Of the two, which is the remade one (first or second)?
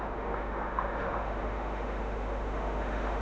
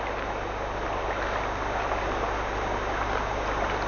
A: first